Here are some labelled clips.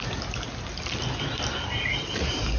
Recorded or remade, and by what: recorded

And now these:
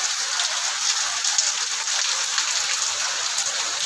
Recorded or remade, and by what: recorded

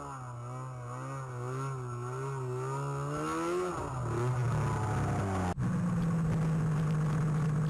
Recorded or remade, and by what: recorded